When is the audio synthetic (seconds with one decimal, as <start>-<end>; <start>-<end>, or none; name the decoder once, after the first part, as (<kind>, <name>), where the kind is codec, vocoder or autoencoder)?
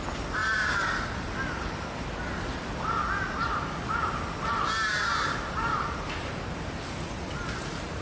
5.7-6.5 (vocoder, BigVGAN v2)